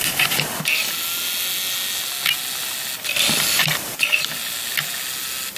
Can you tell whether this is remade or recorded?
recorded